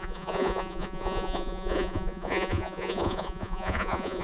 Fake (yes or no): yes